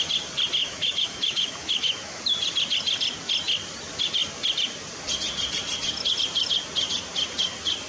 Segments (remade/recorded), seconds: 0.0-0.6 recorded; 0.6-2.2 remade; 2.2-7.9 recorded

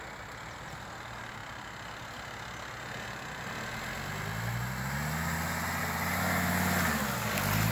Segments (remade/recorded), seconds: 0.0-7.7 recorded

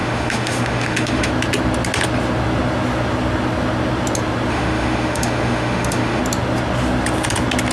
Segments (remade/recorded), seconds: 0.0-1.3 remade; 1.3-4.5 recorded; 4.5-6.2 remade; 6.2-7.7 recorded

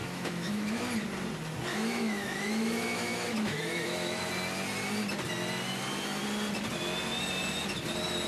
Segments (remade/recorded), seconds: 0.0-0.8 remade; 0.8-1.7 recorded; 1.7-4.3 remade; 4.3-8.3 recorded

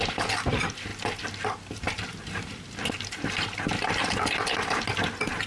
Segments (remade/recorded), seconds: 0.0-5.5 recorded